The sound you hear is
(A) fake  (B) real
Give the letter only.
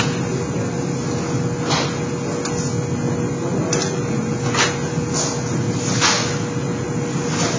B